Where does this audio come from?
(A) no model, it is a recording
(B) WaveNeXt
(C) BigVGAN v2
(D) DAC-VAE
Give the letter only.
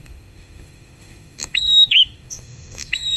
D